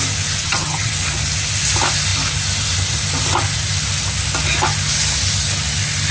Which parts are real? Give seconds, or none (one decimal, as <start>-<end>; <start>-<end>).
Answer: 0.0-0.4; 0.9-6.1